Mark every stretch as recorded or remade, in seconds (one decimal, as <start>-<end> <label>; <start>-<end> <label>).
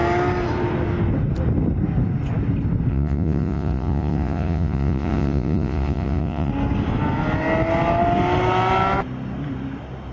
0.0-2.9 recorded; 2.9-6.5 remade; 6.5-10.1 recorded